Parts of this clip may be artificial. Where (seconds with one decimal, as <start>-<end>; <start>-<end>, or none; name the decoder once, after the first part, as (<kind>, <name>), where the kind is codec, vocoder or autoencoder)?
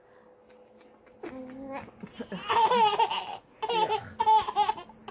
none